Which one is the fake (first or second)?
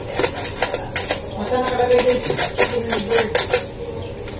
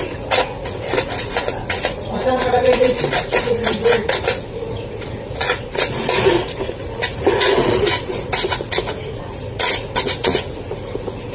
second